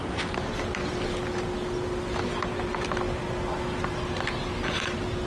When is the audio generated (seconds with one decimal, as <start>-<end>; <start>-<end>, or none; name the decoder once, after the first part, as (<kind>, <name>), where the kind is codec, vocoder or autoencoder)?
none